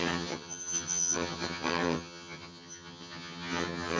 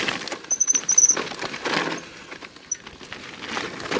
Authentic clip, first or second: second